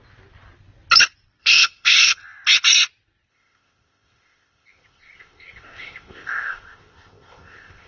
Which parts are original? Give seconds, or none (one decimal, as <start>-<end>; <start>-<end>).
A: 0.0-1.4; 2.2-3.3